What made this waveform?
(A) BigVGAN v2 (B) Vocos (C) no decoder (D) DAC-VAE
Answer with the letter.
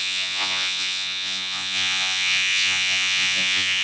B